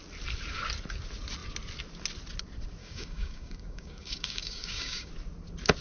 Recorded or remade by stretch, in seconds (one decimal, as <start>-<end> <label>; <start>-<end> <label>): 0.0-2.8 recorded; 2.8-5.1 remade; 5.1-5.8 recorded